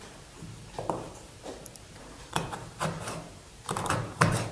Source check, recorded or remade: remade